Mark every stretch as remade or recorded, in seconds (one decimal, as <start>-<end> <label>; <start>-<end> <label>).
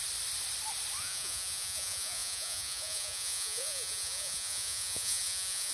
0.0-1.0 recorded; 1.0-5.7 remade